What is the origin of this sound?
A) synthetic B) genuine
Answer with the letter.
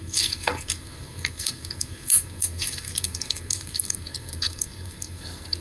A